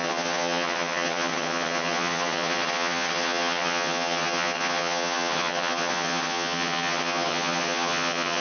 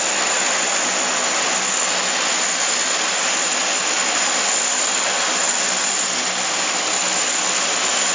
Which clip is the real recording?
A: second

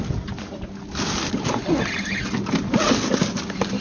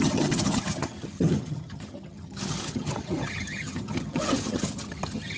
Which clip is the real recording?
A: first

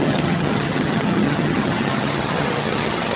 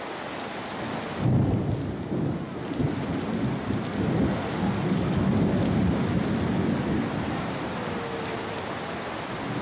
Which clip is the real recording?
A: second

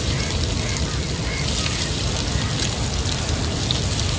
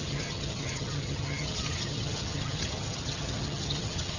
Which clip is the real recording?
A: first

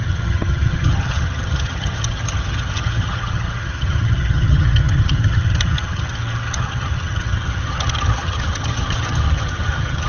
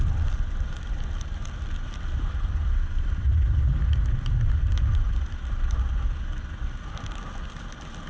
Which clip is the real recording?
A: second